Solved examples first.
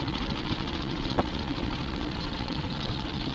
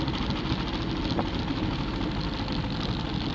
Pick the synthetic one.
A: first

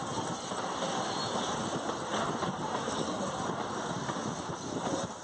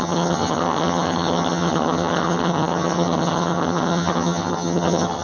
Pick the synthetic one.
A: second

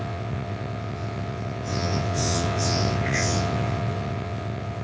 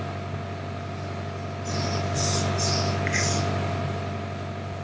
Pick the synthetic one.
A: first